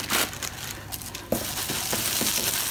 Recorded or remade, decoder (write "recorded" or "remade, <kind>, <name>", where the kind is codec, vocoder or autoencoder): recorded